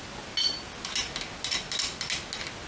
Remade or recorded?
recorded